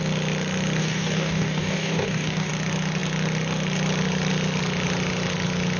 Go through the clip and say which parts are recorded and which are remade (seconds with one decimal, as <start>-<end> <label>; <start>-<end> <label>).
0.0-0.8 recorded; 0.8-2.5 remade; 2.5-5.8 recorded